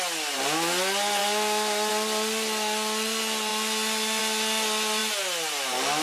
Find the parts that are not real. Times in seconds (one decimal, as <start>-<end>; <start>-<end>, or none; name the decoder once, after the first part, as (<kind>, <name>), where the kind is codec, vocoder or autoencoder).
none